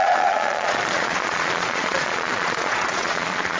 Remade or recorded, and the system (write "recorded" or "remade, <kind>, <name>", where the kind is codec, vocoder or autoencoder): remade, vocoder, Vocos